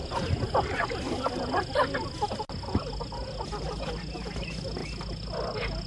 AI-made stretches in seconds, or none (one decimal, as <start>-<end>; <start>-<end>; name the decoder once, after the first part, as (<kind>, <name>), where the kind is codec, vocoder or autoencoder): none